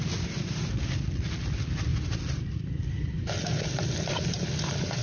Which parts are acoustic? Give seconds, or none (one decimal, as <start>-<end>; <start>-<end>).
0.0-1.9